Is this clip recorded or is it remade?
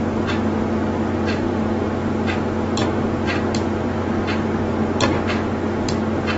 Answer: recorded